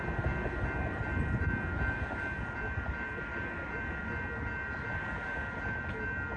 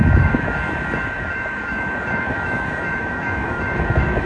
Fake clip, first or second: second